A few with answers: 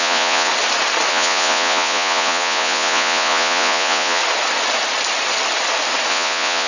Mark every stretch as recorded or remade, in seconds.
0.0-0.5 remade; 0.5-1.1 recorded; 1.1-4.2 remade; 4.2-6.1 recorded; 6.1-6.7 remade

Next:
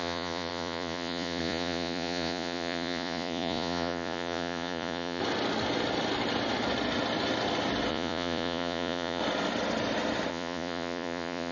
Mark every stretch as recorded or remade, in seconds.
0.0-5.2 remade; 5.2-7.9 recorded; 7.9-9.2 remade; 9.2-10.3 recorded; 10.3-11.5 remade